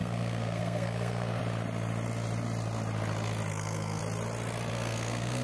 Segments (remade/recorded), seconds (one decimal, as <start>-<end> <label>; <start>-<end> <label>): 0.0-1.4 remade; 1.4-3.5 recorded; 3.5-4.0 remade; 4.0-4.7 recorded; 4.7-5.4 remade